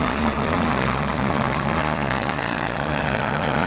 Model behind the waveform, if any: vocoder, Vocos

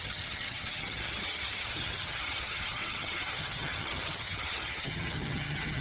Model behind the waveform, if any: vocoder, HiFi-GAN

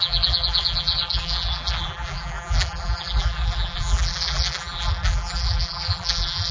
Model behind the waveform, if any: vocoder, BigVGAN v2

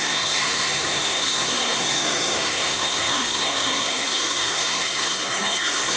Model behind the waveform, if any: codec, SNAC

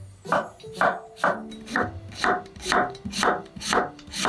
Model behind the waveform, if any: none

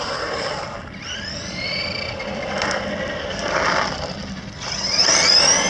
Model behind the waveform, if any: none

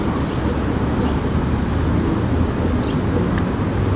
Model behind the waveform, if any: none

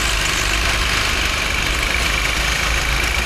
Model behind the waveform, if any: none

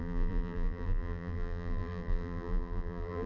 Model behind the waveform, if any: vocoder, BigVGAN v2